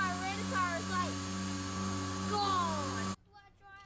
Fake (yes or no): no